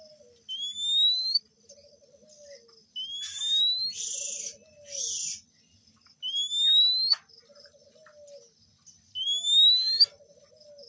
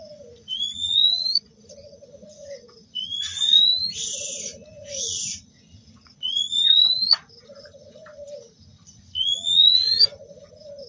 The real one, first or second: first